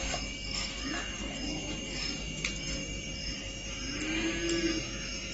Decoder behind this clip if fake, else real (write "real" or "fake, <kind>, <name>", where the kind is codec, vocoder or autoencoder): real